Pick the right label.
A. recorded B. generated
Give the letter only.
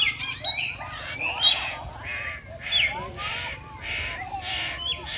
A